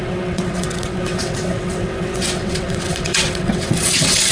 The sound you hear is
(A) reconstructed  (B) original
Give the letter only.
A